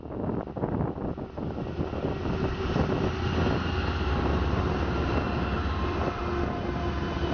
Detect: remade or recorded recorded